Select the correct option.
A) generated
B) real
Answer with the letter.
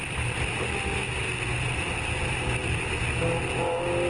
B